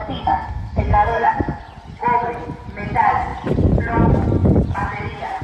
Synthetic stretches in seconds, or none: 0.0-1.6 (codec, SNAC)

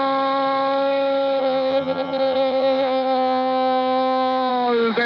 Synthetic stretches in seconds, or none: 1.4-4.5 (vocoder, HiFi-GAN)

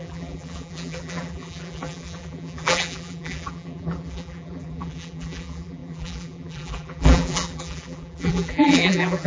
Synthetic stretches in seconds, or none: 0.0-9.3 (vocoder, BigVGAN v2)

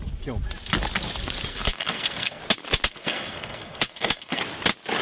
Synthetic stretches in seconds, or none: 1.5-2.4 (codec, SNAC); 2.9-4.4